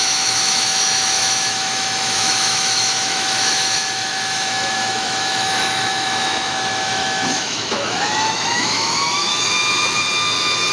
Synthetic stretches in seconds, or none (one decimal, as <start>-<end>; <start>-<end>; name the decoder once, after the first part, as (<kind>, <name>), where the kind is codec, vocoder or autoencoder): 0.0-9.3 (autoencoder, DAC-VAE)